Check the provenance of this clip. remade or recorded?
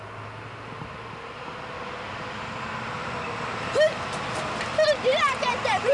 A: recorded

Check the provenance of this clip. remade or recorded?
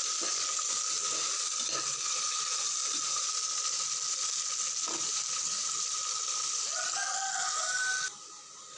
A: recorded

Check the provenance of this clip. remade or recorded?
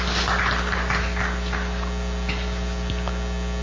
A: recorded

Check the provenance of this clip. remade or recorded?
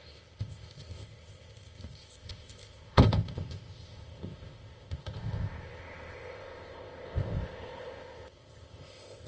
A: remade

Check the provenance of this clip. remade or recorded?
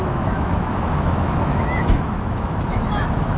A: remade